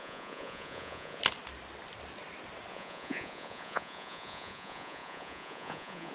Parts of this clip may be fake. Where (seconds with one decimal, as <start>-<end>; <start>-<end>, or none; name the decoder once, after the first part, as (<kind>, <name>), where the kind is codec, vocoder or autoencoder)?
0.0-1.2 (vocoder, Vocos); 2.7-6.1